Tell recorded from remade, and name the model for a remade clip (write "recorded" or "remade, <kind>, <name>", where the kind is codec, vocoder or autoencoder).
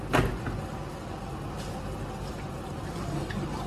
recorded